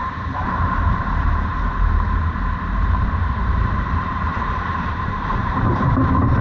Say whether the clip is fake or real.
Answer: fake